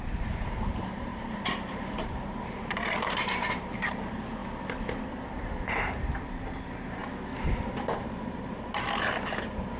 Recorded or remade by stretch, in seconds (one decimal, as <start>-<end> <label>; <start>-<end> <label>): 0.0-4.4 remade; 4.4-5.3 recorded; 5.3-7.0 remade; 7.0-7.9 recorded; 7.9-9.8 remade